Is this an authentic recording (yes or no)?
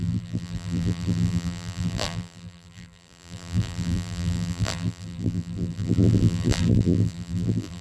no